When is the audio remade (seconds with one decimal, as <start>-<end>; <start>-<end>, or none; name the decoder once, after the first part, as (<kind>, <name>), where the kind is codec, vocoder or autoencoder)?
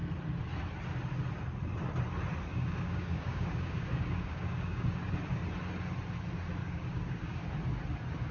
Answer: 2.5-5.1 (codec, DAC); 6.6-7.5